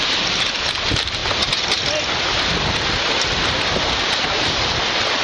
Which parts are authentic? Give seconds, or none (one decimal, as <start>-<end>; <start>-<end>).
0.0-5.2

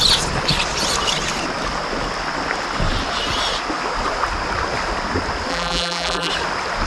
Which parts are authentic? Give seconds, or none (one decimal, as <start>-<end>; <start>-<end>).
0.0-5.5; 6.3-6.9

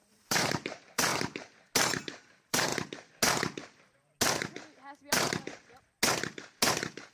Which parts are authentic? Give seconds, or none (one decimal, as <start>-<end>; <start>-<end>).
1.1-1.9; 2.7-7.1

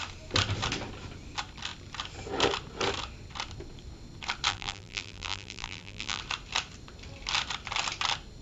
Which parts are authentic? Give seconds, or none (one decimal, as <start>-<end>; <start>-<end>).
0.0-4.5; 6.2-8.4

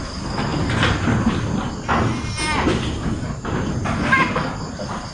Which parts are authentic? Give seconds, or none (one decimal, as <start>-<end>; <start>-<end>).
0.0-5.1

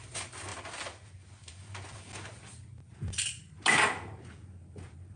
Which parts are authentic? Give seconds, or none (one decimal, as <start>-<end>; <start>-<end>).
0.0-5.2